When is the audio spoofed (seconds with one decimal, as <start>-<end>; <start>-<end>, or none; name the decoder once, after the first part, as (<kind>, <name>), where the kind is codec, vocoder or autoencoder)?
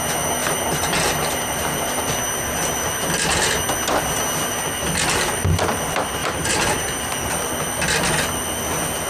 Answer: 0.4-2.0 (vocoder, BigVGAN v2); 6.2-7.3